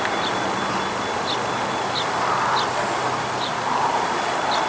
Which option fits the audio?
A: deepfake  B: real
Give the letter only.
B